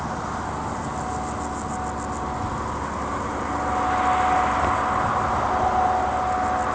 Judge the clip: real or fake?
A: real